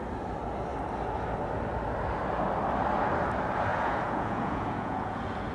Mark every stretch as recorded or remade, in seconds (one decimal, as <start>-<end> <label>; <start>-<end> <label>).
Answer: 0.0-3.7 recorded; 3.7-5.5 remade